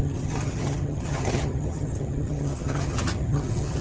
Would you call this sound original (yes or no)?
no